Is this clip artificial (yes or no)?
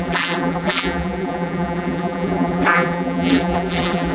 yes